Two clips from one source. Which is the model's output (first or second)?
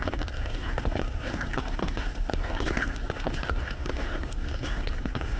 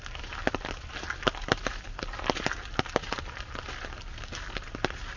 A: first